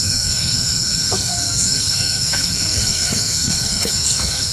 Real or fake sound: fake